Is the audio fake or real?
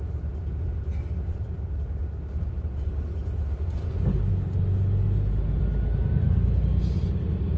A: real